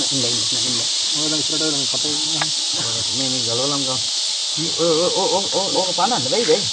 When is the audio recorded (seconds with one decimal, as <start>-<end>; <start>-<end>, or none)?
0.0-6.7